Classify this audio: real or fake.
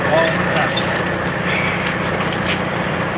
real